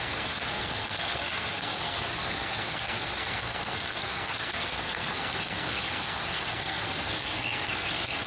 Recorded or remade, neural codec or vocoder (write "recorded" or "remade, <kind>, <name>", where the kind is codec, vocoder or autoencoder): remade, codec, SNAC